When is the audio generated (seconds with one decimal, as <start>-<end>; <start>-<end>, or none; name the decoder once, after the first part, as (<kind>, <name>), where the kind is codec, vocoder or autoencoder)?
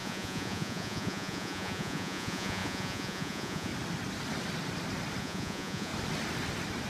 0.0-3.7 (vocoder, Vocos); 5.2-5.9